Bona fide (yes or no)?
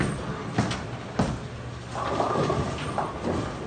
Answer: yes